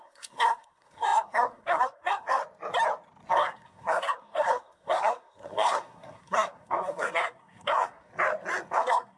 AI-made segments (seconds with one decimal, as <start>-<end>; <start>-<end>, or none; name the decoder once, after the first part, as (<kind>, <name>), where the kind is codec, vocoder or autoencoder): 0.0-2.4 (codec, SNAC); 3.3-8.1; 8.7-9.2